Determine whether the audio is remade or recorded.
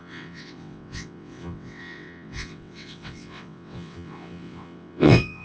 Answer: remade